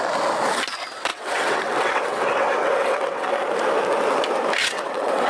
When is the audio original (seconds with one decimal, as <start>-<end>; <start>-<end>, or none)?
0.0-1.1; 3.3-4.6